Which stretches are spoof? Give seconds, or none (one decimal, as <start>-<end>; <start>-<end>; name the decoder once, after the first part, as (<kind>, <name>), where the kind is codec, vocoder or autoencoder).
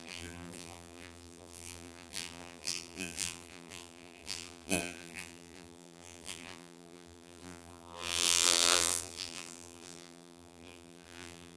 0.0-11.6 (vocoder, BigVGAN v2)